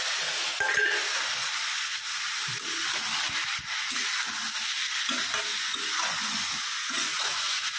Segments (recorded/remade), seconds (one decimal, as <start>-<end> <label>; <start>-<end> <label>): 0.0-5.5 recorded; 5.5-7.8 remade